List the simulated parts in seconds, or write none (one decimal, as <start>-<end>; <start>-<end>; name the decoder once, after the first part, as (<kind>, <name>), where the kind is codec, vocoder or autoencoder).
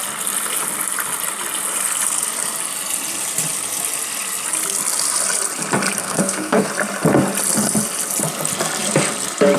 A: 6.0-6.7 (codec, SNAC)